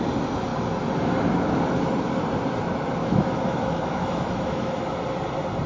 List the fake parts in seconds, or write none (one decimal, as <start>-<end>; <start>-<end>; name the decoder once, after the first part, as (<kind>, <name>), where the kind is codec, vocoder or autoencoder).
3.0-4.9 (autoencoder, DAC-VAE)